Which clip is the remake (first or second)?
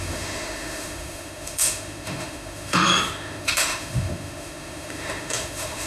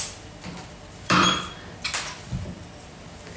first